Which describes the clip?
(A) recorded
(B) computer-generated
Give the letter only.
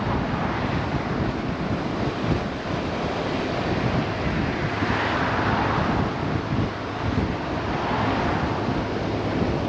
B